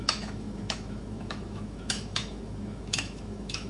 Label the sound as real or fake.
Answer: fake